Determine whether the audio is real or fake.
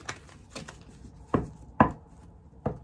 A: real